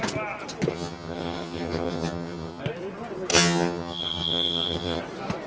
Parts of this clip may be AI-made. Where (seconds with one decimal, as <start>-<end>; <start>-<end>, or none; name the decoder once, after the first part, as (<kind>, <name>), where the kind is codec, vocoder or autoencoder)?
0.7-2.6 (vocoder, HiFi-GAN); 3.3-5.0